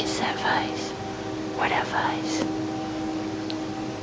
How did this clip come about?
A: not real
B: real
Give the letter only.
B